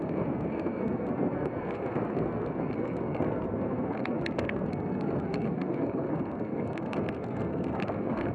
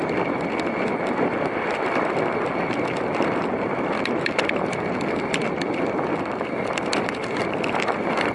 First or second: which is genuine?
second